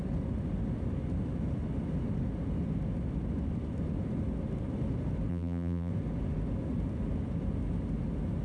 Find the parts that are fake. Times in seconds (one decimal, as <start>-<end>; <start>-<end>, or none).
5.3-5.9